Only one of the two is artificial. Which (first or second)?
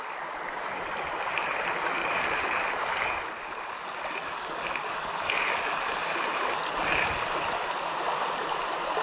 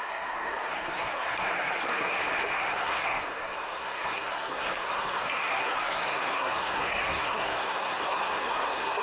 second